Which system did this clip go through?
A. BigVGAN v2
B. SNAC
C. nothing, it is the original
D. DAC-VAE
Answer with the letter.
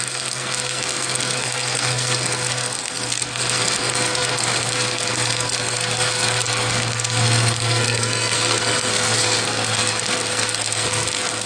B